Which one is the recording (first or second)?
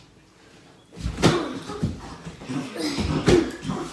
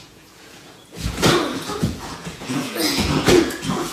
first